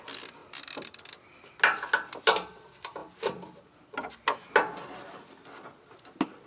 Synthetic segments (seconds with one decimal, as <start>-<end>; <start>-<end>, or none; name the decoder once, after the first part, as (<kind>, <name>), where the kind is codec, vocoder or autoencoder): none